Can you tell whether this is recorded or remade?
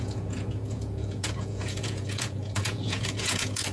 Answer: remade